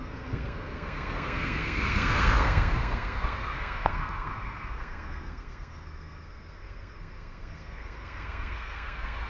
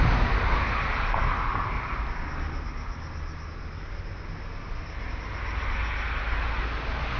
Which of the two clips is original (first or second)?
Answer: second